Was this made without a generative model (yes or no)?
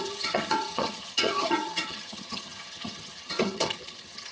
no